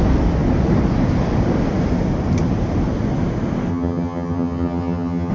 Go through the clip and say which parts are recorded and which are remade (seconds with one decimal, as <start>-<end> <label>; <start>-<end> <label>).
0.0-3.7 recorded; 3.7-5.3 remade